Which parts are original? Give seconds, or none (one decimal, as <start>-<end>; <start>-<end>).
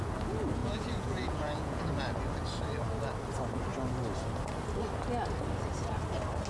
0.0-0.6; 1.8-6.5